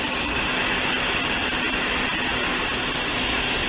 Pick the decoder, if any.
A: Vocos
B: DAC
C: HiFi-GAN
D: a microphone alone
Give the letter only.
D